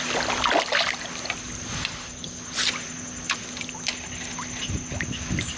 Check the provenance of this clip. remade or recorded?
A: recorded